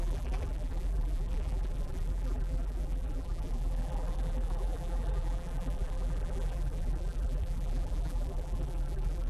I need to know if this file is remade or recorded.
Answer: remade